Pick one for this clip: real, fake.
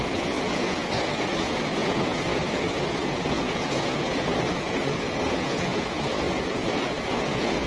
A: fake